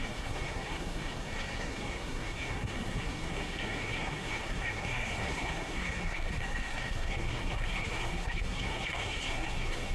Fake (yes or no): yes